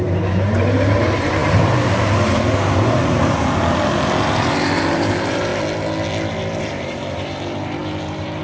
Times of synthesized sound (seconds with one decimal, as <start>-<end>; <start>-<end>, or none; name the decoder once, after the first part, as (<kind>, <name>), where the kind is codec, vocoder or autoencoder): 0.0-5.5 (vocoder, BigVGAN v2); 6.6-8.4